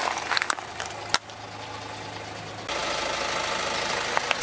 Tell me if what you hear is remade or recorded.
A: recorded